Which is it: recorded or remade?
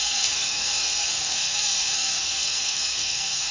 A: remade